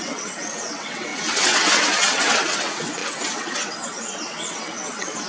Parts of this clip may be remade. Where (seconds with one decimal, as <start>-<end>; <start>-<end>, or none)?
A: 0.0-5.3